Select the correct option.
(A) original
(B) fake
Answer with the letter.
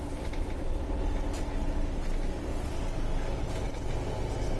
A